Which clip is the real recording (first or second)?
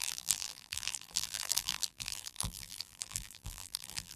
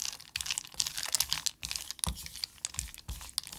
second